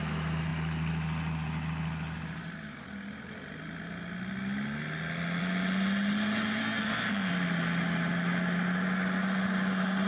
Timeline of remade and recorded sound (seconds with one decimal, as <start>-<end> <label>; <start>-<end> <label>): 0.0-6.6 recorded; 6.6-7.3 remade; 7.3-10.1 recorded